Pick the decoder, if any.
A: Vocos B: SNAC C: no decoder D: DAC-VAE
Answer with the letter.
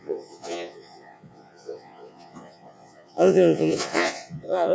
A